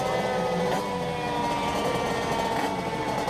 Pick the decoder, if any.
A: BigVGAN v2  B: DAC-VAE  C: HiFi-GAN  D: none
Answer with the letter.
D